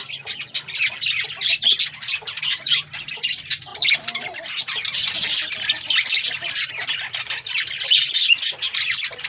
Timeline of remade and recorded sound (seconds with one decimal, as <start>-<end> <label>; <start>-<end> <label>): 0.0-9.3 recorded